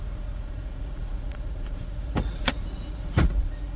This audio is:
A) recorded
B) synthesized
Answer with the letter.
B